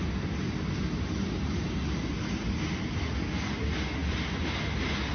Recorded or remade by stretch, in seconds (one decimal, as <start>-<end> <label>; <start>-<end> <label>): 0.0-5.1 recorded

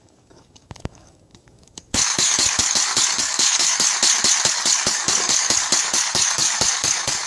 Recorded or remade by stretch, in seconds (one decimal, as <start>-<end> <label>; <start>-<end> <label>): 0.0-3.9 remade; 3.9-4.5 recorded; 4.5-7.3 remade

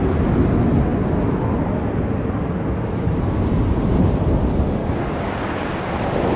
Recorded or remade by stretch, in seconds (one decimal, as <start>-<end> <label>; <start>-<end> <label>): 0.0-4.8 recorded; 4.8-5.3 remade; 5.3-6.4 recorded